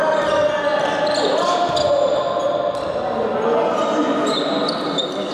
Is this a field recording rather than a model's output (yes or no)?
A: yes